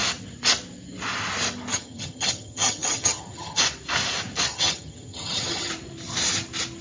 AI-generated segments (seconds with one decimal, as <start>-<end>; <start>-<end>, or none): 1.7-3.6; 4.5-5.7